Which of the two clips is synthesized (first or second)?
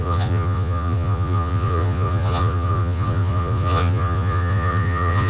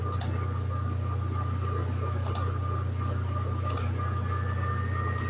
first